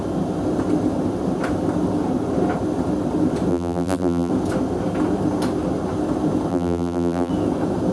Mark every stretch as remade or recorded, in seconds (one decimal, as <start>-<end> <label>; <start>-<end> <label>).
0.0-3.5 recorded; 3.5-4.3 remade; 4.3-6.5 recorded; 6.5-7.3 remade; 7.3-7.9 recorded